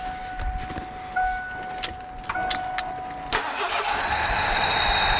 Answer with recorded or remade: recorded